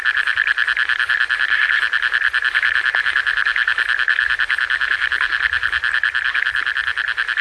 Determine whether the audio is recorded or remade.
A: recorded